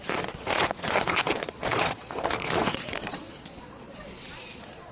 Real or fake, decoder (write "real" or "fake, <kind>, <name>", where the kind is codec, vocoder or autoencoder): fake, vocoder, Vocos